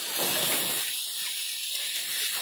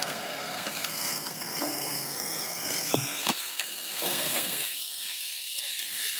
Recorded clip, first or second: first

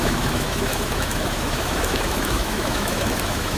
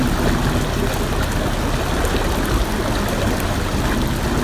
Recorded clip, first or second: second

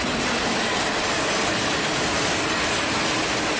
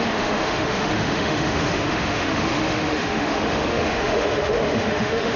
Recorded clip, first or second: first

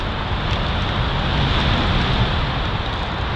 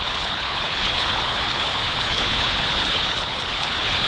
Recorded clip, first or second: first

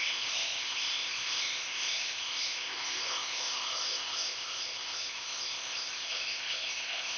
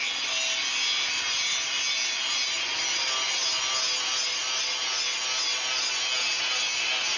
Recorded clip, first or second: second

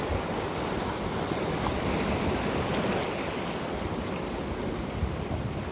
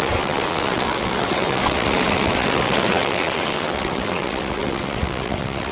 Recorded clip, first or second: first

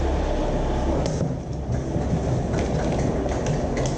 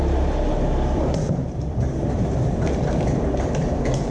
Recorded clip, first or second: first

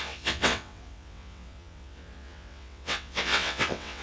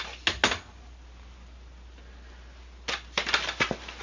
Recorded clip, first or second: second